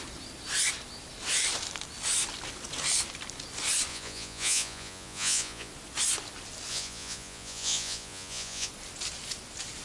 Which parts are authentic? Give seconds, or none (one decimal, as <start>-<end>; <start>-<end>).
0.0-3.9; 5.7-6.7; 8.7-9.8